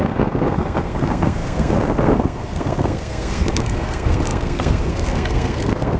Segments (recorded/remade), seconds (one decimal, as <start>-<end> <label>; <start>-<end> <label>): 0.0-6.0 remade